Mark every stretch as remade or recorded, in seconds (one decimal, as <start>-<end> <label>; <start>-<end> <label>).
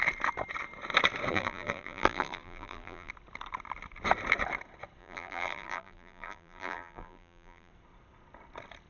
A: 0.0-1.3 recorded; 1.3-3.1 remade; 3.1-5.0 recorded; 5.0-7.7 remade; 7.7-8.9 recorded